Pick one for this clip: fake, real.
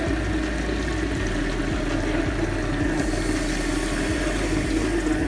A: real